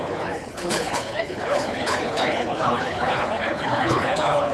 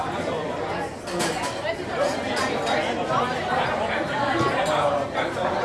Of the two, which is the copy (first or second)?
first